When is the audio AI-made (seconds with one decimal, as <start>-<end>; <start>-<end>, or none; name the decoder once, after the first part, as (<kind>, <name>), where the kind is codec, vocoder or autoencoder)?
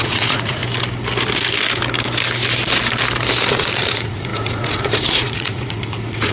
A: 0.0-0.6 (vocoder, Vocos); 3.5-6.3